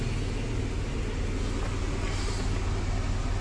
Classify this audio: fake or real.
real